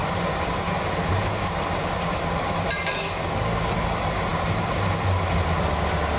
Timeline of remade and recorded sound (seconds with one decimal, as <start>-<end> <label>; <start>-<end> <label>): 0.0-2.8 remade; 2.8-4.3 recorded; 4.3-4.9 remade; 4.9-6.2 recorded